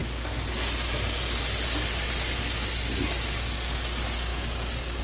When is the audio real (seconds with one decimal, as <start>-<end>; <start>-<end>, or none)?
0.0-5.0